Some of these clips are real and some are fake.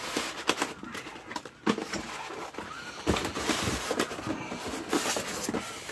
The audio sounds real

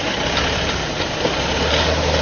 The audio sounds real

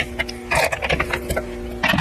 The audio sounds real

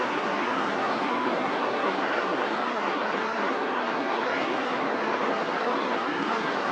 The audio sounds fake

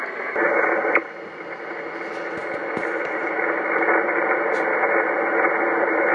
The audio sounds real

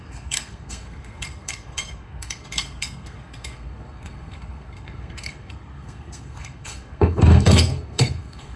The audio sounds fake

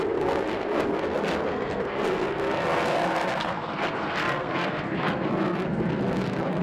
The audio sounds fake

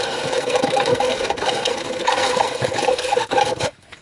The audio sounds fake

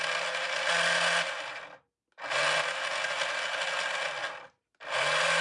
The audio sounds real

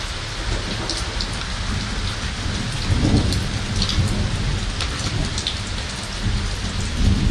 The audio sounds real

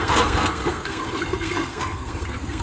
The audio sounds fake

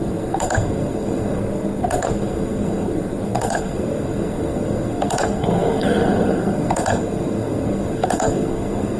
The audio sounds fake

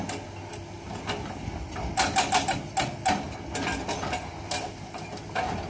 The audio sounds real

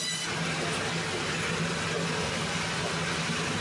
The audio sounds real